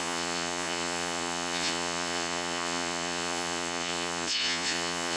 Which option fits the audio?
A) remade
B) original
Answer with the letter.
A